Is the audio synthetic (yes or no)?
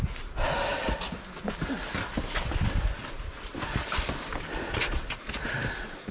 no